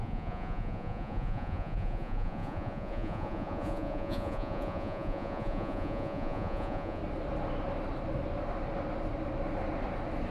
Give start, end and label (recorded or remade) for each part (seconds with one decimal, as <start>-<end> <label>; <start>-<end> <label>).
0.0-7.0 remade; 7.0-10.3 recorded